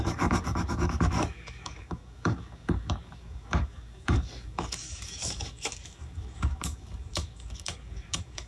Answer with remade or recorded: remade